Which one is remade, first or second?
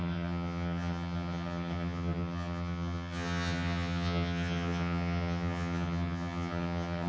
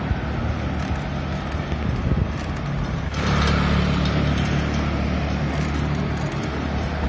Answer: first